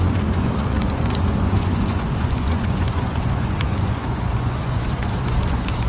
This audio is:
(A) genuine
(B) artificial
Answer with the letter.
B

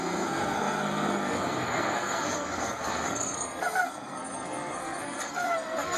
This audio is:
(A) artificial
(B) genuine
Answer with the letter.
A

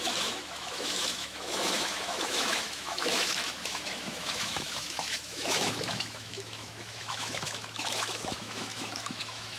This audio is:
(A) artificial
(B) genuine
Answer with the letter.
A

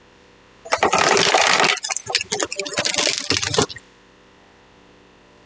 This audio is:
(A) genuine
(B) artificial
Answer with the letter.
A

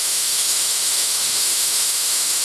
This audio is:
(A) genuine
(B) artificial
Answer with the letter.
B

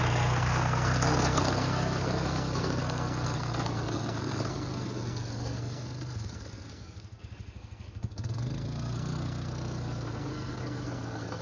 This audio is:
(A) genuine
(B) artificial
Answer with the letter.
B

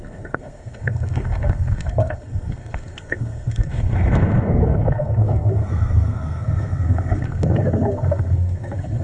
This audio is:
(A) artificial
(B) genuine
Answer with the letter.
A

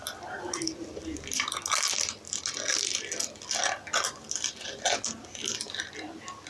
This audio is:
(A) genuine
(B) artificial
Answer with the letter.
A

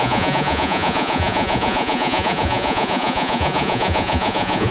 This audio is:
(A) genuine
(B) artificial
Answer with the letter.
B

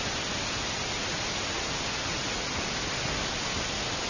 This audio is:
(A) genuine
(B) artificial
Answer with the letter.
A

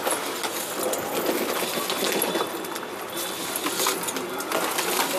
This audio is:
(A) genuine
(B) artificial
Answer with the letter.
A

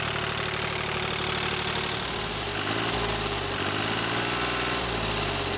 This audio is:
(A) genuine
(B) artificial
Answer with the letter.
A